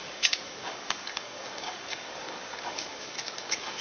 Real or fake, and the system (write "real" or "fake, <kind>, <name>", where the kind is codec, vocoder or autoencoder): fake, codec, DAC